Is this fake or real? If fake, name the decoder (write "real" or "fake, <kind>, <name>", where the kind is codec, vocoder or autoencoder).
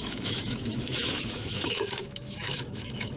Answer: fake, autoencoder, DAC-VAE